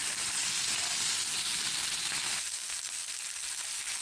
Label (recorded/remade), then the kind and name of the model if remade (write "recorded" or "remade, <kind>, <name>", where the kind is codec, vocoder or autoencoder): recorded